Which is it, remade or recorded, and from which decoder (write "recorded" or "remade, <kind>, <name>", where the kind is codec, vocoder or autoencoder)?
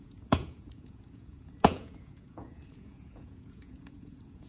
remade, vocoder, Vocos